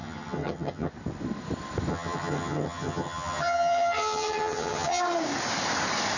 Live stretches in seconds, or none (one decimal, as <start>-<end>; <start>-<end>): 0.9-1.9; 5.0-6.2